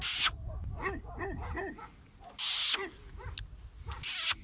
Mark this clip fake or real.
real